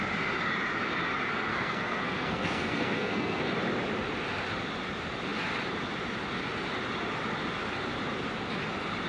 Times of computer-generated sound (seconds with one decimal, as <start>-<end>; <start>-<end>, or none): 1.5-3.5